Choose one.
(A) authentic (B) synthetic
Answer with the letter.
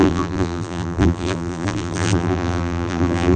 B